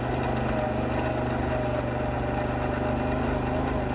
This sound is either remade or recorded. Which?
recorded